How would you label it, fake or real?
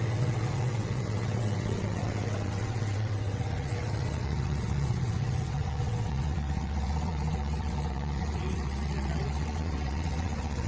fake